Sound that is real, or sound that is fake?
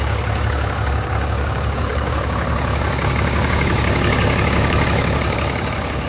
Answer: fake